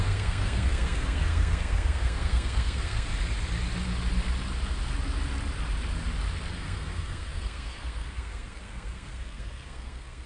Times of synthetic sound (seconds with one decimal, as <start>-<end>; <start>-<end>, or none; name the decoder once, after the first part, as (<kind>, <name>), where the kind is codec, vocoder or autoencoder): 0.0-3.1 (codec, SNAC); 6.5-10.3